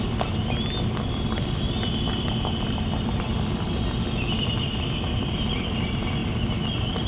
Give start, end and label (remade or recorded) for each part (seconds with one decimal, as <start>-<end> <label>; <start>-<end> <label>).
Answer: 0.0-7.1 recorded